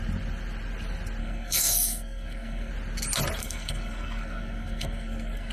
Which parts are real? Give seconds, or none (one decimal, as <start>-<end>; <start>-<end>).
0.0-1.2; 2.7-3.4